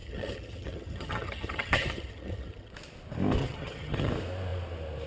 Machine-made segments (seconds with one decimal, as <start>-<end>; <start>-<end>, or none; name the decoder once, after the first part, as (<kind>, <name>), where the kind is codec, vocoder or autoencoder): 0.0-2.7 (vocoder, HiFi-GAN); 3.4-4.1